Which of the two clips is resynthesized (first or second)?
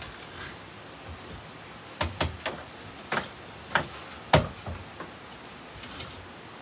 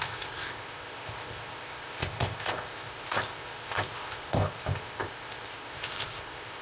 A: second